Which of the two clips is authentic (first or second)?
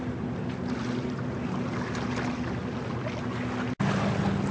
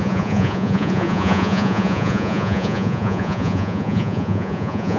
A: first